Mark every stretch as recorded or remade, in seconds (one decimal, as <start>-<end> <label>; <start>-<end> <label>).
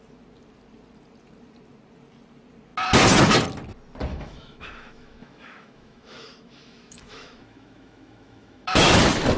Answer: 0.0-4.1 recorded; 4.1-9.0 remade; 9.0-9.4 recorded